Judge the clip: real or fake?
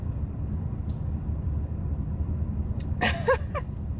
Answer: fake